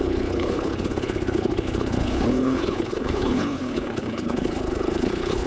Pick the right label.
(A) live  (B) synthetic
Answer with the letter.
B